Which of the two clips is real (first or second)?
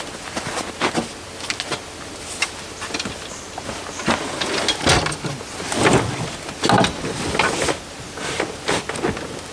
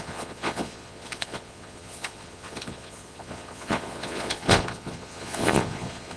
first